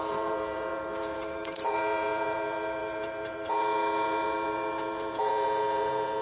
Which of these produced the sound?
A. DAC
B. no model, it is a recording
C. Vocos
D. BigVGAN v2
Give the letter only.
C